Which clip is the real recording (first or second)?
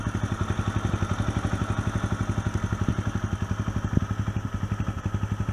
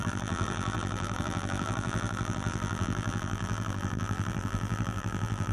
first